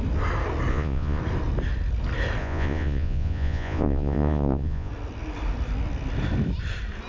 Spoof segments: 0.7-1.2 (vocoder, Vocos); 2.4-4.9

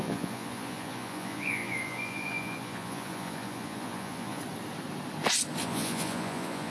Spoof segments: 0.0-4.4 (vocoder, Vocos); 5.6-6.7